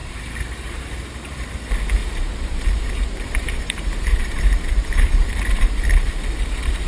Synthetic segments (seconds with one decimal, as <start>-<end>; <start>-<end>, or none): 0.0-0.9; 2.0-6.1